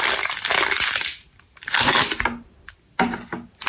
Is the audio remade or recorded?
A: recorded